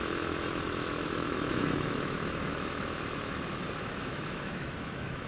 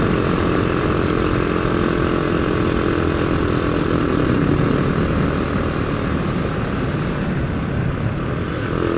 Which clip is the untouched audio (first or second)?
second